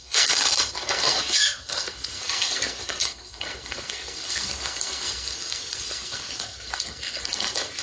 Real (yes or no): no